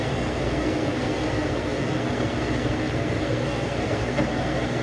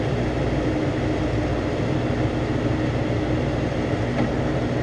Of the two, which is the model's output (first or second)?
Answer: first